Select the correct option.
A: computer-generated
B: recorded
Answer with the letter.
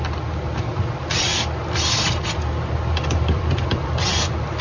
B